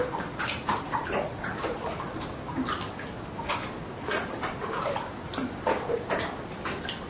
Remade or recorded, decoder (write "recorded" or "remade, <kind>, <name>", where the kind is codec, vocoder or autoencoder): recorded